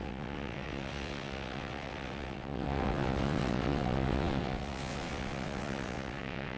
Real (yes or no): no